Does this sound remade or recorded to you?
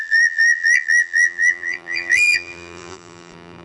remade